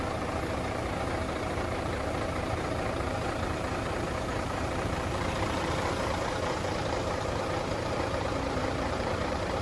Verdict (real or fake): fake